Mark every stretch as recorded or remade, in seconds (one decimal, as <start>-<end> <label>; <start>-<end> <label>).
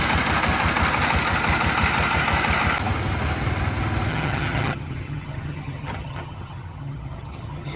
0.0-4.1 recorded; 4.1-7.8 remade